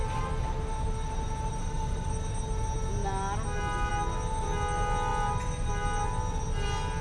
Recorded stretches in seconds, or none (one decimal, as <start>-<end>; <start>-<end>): 0.0-1.6; 2.1-7.0